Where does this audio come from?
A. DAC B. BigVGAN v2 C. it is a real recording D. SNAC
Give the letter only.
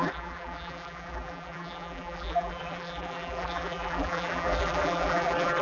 B